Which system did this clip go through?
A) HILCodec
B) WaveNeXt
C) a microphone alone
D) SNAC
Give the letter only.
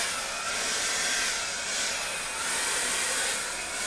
C